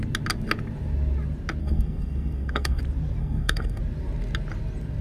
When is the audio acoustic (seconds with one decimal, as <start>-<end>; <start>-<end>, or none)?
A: 0.0-1.6; 2.8-3.2; 3.8-5.0